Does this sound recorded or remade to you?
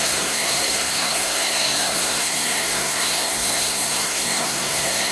remade